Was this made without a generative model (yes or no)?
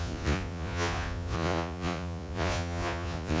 no